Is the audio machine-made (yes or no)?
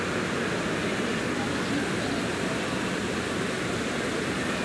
no